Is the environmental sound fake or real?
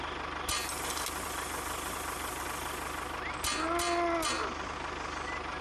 real